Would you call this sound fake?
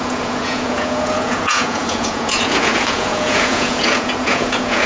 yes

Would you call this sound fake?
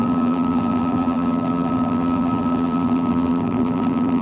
yes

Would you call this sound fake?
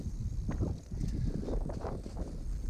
no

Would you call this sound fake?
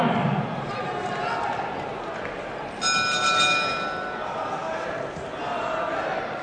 no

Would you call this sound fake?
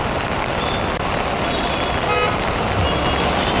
no